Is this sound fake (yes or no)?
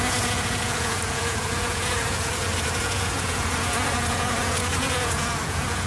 yes